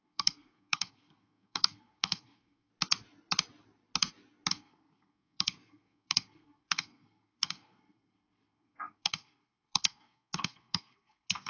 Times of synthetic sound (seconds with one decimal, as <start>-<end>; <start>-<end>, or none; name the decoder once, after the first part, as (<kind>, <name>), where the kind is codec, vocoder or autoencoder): 0.0-2.7 (codec, SNAC); 4.5-11.5